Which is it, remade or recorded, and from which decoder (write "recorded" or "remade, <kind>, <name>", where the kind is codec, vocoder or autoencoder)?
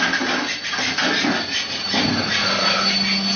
recorded